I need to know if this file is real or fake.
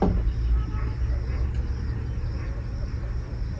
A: real